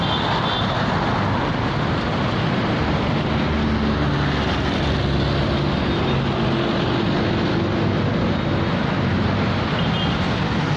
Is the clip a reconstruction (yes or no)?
no